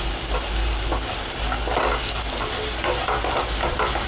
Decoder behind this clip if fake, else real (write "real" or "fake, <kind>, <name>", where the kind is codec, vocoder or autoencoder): real